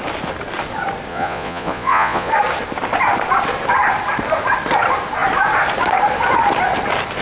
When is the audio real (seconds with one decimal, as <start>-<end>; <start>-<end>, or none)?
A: 0.0-1.1; 2.3-7.2